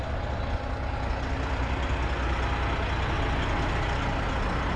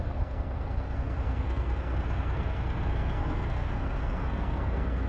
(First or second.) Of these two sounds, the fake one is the second